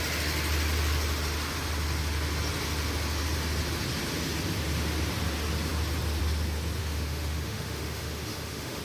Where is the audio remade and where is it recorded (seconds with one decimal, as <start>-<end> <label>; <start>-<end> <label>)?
0.0-6.8 recorded; 6.8-8.8 remade